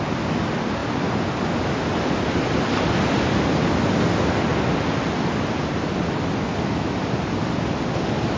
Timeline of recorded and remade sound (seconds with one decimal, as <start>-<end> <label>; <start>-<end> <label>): 0.0-8.4 recorded